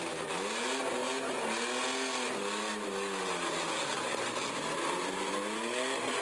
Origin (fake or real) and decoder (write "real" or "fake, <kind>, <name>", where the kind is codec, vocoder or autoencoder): real